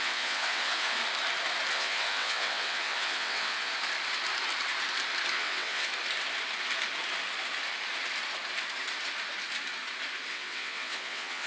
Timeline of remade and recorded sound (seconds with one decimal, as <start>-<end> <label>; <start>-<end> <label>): 0.0-1.0 remade; 1.0-1.7 recorded; 1.7-3.7 remade; 3.7-5.3 recorded; 5.3-5.9 remade; 5.9-10.3 recorded; 10.3-11.5 remade